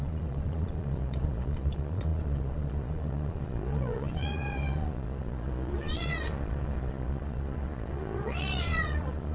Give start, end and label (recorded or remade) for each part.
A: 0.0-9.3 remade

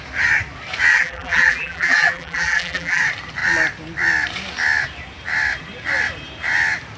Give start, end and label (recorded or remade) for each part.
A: 0.0-0.9 recorded; 0.9-3.0 remade; 3.0-7.0 recorded

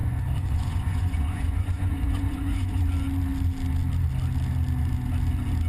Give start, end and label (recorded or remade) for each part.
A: 0.0-2.8 remade; 2.8-5.7 recorded

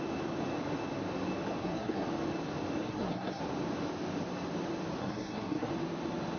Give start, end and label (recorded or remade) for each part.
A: 0.0-1.6 recorded; 1.6-2.1 remade; 2.1-2.8 recorded; 2.8-3.4 remade; 3.4-5.0 recorded; 5.0-5.7 remade; 5.7-6.4 recorded

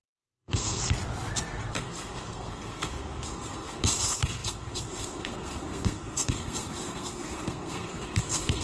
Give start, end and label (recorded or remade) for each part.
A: 0.0-0.8 remade; 0.8-1.7 recorded; 1.7-8.6 remade

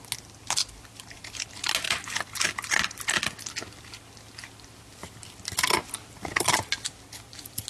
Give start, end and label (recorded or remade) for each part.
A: 0.0-7.7 recorded

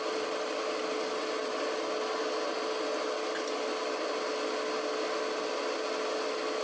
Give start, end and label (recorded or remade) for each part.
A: 0.0-6.6 recorded

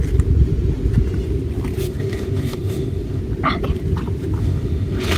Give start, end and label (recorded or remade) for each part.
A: 0.0-1.8 recorded; 1.8-3.2 remade; 3.2-4.4 recorded; 4.4-5.2 remade